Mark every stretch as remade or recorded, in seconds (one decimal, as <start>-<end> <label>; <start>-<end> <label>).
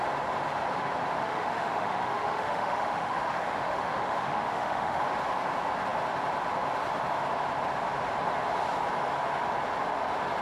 0.0-1.2 recorded; 1.2-5.0 remade; 5.0-10.4 recorded